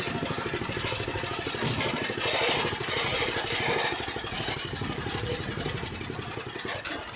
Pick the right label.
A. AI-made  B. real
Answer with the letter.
B